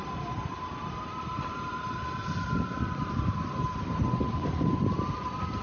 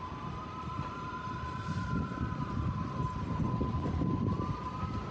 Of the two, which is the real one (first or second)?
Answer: first